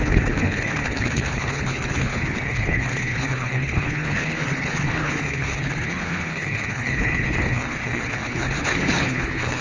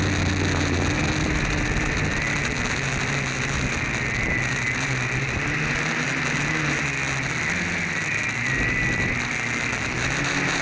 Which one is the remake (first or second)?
first